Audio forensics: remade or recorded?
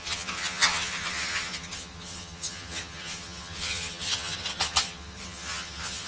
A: remade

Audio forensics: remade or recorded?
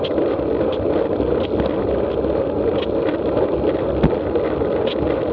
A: recorded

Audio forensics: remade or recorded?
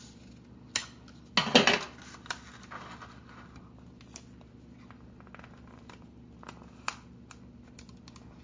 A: recorded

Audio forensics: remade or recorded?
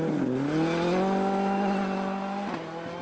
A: recorded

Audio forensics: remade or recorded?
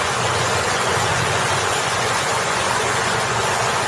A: remade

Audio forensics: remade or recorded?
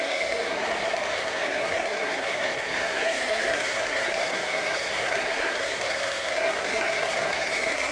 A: remade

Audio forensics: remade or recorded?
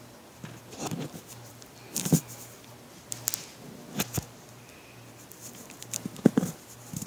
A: recorded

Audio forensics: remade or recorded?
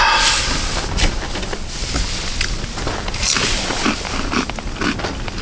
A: recorded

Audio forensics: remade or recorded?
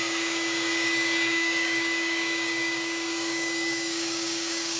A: remade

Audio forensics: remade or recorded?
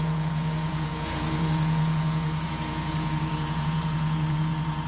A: remade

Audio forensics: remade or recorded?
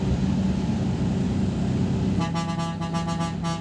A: recorded